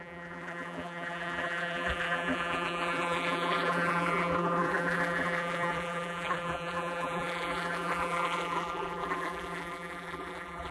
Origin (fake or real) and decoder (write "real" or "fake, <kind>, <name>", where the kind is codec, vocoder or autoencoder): fake, vocoder, BigVGAN v2